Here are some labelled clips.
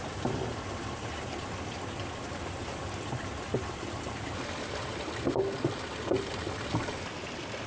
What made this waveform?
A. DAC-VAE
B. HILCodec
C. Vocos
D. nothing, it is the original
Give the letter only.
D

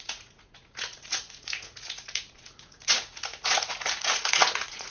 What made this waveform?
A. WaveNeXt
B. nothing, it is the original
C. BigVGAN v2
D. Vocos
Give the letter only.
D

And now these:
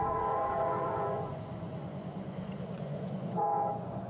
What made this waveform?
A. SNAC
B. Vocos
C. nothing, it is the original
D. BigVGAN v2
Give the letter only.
B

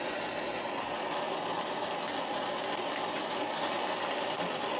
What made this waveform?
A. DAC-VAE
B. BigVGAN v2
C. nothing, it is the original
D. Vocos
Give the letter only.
B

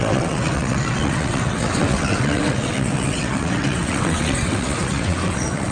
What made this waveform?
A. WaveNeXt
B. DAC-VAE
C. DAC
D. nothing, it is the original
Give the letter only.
A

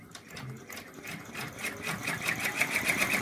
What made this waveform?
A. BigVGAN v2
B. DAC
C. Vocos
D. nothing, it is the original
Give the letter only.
D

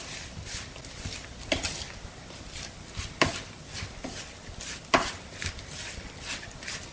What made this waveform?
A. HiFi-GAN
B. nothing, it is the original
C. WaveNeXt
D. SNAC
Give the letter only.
B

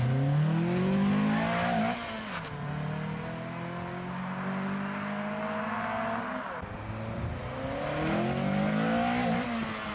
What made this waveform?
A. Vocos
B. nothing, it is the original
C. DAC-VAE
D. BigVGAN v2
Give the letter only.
B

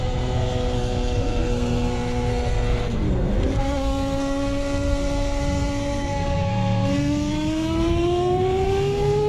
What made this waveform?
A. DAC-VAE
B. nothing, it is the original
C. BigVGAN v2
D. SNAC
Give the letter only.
D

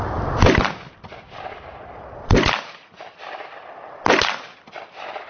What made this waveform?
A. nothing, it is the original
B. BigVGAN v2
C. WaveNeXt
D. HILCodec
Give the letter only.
A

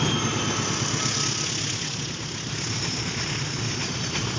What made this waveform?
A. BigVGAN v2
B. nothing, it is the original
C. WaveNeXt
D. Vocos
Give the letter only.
B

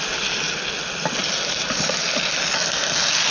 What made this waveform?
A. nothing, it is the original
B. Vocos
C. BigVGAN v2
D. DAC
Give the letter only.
A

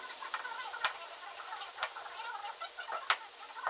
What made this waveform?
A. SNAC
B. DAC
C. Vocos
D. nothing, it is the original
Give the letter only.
D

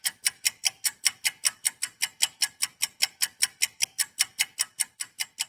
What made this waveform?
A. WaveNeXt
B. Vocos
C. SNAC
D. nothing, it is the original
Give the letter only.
D